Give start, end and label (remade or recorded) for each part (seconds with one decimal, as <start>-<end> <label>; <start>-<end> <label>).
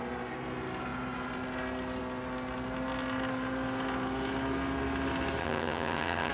0.0-5.4 recorded; 5.4-6.3 remade